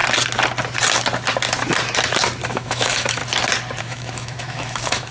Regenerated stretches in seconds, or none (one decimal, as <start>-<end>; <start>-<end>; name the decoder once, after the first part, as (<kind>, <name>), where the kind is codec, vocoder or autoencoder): 2.5-3.2 (autoencoder, DAC-VAE); 3.8-5.1